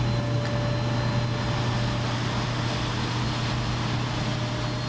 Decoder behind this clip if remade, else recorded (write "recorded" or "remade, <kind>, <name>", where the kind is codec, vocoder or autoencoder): recorded